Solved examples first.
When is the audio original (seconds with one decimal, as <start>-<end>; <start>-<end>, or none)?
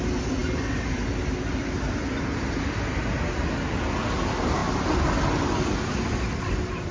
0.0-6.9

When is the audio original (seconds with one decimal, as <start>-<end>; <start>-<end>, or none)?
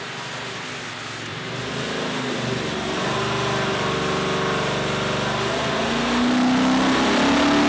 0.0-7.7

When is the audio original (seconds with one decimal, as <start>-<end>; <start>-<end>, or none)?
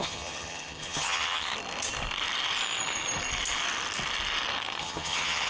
1.5-4.8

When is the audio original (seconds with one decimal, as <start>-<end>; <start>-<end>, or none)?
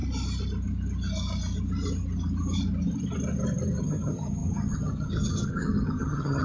0.0-3.8